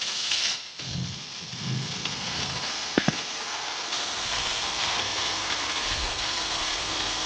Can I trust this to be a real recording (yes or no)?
no